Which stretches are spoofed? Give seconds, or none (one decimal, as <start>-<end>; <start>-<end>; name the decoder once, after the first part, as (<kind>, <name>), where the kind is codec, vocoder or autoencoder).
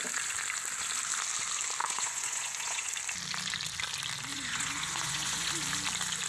1.8-2.9 (vocoder, Vocos); 4.3-5.5